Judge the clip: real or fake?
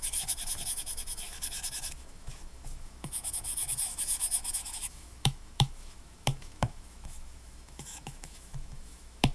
fake